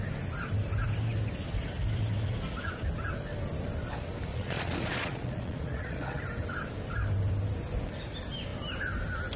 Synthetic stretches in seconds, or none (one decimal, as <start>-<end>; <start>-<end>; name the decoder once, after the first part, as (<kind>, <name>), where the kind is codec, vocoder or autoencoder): 4.3-6.2 (vocoder, Vocos)